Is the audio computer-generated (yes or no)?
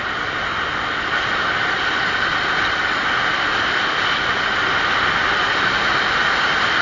no